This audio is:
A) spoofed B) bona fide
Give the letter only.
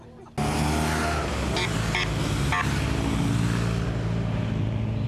B